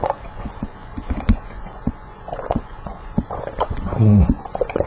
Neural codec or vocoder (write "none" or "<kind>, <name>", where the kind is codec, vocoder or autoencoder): vocoder, Vocos